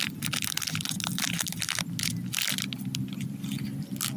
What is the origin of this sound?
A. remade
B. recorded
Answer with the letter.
B